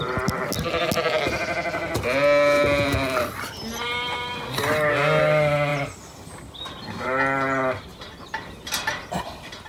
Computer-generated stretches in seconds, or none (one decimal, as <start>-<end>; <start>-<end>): none